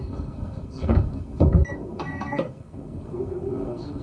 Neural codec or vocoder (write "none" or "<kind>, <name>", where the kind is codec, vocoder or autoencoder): codec, SNAC